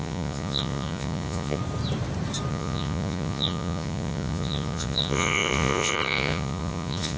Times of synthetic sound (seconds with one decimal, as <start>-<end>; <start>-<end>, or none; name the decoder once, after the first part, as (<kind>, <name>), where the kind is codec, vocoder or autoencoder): 0.0-1.6 (vocoder, Vocos); 2.5-7.2